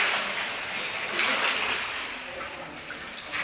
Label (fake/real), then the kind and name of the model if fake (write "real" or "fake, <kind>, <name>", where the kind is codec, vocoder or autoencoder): real